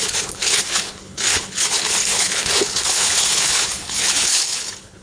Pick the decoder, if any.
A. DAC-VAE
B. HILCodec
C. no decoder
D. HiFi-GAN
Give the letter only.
B